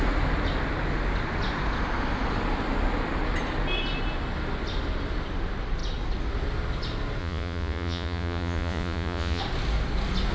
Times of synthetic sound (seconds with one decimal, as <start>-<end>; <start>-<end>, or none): 7.2-9.4